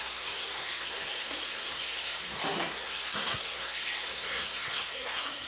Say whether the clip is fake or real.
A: fake